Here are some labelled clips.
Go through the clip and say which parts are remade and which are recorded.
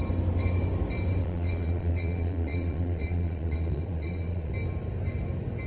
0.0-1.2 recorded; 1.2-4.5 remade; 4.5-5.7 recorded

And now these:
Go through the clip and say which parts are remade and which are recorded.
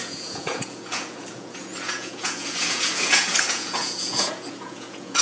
0.0-5.2 remade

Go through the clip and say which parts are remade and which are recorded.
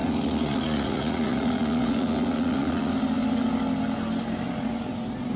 0.0-2.9 remade; 2.9-5.4 recorded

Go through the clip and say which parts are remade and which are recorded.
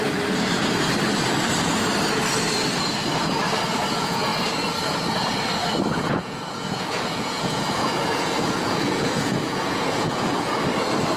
0.0-3.9 recorded; 3.9-4.3 remade; 4.3-5.9 recorded; 5.9-10.5 remade; 10.5-11.2 recorded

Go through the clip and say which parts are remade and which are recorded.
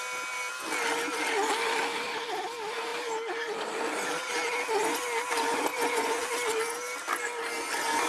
0.0-5.7 recorded; 5.7-6.3 remade; 6.3-8.1 recorded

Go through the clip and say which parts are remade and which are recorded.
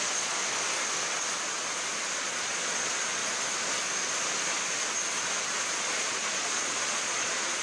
0.0-0.4 remade; 0.4-2.2 recorded; 2.2-3.2 remade; 3.2-5.7 recorded; 5.7-7.6 remade